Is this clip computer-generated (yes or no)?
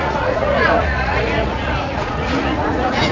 yes